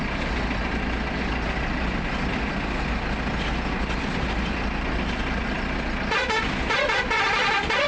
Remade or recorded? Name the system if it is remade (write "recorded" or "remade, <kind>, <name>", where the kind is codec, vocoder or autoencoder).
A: recorded